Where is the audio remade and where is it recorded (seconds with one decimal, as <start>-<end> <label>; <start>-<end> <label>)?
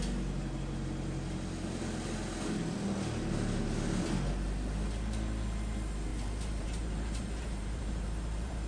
0.0-6.1 recorded; 6.1-8.7 remade